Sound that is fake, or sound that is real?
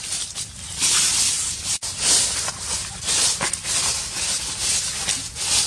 real